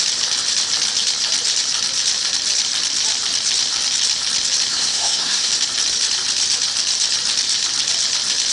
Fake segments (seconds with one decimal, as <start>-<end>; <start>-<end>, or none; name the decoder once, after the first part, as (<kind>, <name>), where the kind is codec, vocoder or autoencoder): 4.7-5.5 (codec, SNAC)